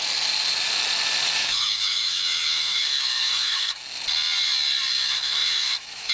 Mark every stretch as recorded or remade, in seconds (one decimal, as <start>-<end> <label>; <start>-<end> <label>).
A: 0.0-1.4 recorded; 1.4-3.8 remade; 3.8-4.9 recorded; 4.9-6.1 remade